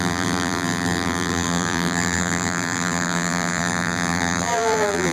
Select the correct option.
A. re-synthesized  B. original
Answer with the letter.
A